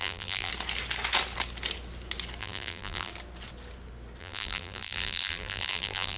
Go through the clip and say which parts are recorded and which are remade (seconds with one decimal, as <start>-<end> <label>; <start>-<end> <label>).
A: 0.0-0.5 remade; 0.5-2.4 recorded; 2.4-3.1 remade; 3.1-4.2 recorded; 4.2-6.2 remade